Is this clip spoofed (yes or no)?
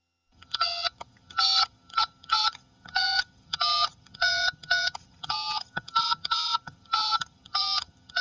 yes